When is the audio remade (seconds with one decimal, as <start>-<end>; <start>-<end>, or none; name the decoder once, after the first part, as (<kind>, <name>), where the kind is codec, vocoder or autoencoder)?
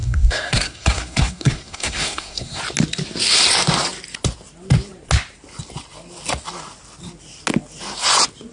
0.0-2.6 (codec, SNAC)